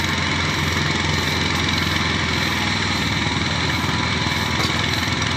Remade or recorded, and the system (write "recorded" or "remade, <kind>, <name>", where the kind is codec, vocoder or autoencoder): recorded